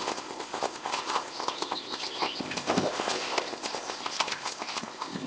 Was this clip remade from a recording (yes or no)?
yes